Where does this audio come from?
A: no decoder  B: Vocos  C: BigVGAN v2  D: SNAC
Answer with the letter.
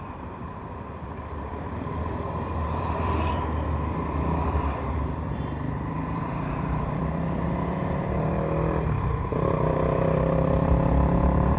C